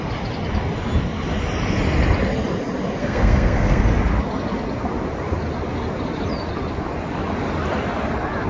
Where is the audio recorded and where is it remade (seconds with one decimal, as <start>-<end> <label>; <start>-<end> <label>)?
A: 0.0-3.0 recorded; 3.0-3.8 remade; 3.8-8.5 recorded